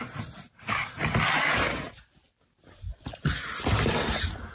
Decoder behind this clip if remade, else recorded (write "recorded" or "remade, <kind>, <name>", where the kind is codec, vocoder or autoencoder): recorded